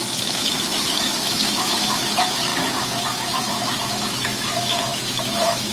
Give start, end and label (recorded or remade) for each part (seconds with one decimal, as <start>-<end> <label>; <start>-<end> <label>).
0.0-5.7 remade